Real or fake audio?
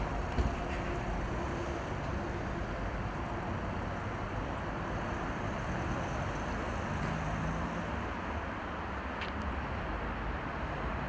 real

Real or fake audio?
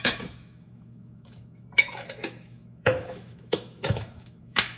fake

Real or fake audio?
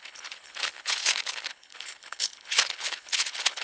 fake